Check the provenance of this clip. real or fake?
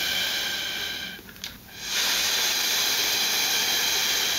real